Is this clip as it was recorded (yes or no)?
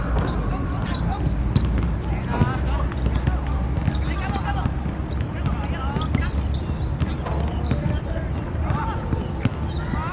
yes